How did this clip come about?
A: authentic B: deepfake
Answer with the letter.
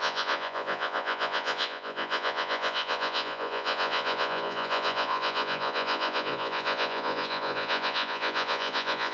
B